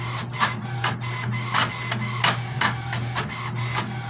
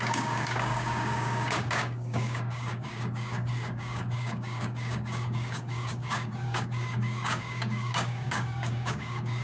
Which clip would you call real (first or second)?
first